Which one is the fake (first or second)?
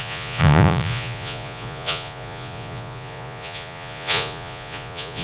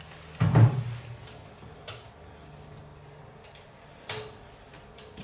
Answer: first